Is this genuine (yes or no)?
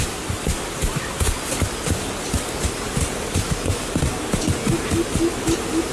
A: yes